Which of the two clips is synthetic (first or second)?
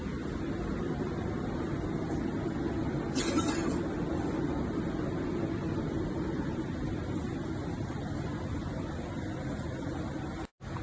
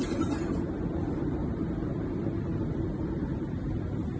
second